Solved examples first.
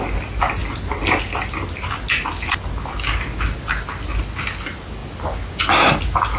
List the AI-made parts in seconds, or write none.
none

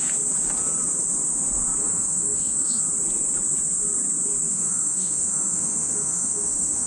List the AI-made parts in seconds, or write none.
1.8-2.8 (autoencoder, DAC-VAE); 4.5-6.9

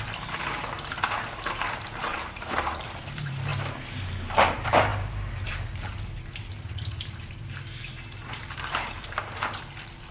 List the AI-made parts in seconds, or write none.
0.0-3.5 (vocoder, BigVGAN v2); 4.4-10.1

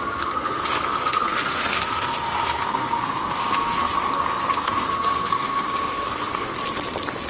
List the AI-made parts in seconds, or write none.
0.0-6.5 (codec, SNAC)

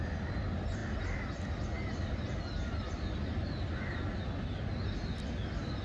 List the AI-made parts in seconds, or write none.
none

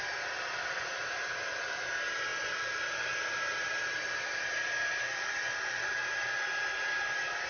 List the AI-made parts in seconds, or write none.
none

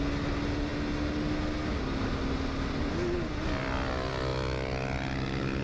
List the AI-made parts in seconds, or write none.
none